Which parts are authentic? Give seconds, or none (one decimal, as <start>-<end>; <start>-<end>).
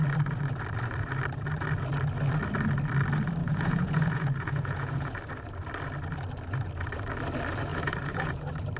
0.0-3.4; 5.1-7.7; 8.4-8.8